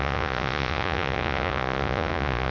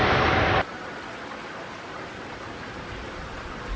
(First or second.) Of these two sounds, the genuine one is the second